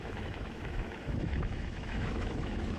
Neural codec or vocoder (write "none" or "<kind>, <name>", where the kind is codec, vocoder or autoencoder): autoencoder, DAC-VAE